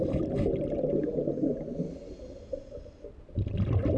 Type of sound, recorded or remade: recorded